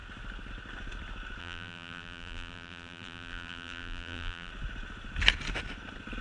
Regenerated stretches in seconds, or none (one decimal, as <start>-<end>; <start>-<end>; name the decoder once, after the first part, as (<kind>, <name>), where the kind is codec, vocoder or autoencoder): 1.4-4.5 (vocoder, BigVGAN v2)